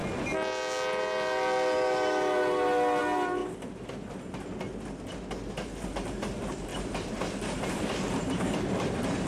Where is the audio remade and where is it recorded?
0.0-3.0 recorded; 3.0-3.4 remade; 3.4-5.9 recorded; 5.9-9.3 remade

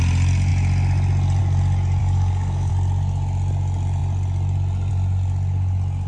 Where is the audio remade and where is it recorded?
0.0-2.0 recorded; 2.0-2.7 remade; 2.7-6.1 recorded

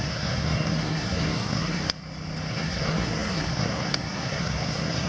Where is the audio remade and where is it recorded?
0.0-1.8 remade; 1.8-2.5 recorded; 2.5-5.1 remade

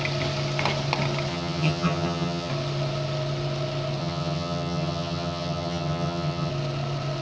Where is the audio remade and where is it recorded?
0.0-1.3 recorded; 1.3-2.5 remade; 2.5-4.0 recorded; 4.0-6.5 remade; 6.5-7.2 recorded

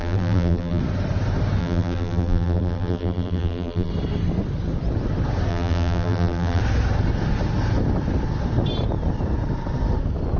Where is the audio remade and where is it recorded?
0.0-0.8 remade; 0.8-1.6 recorded; 1.6-3.9 remade; 3.9-5.5 recorded; 5.5-6.6 remade; 6.6-10.4 recorded

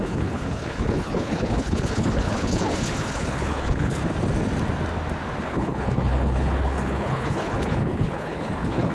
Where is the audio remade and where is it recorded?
0.0-4.0 remade; 4.0-5.4 recorded; 5.4-8.9 remade

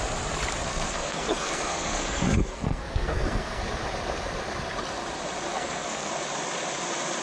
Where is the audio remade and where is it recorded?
0.0-0.7 recorded; 0.7-3.6 remade; 3.6-5.5 recorded; 5.5-6.1 remade; 6.1-7.2 recorded